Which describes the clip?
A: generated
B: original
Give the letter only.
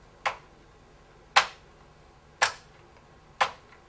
B